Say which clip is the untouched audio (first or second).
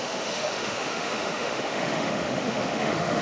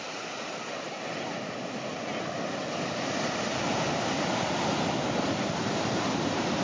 second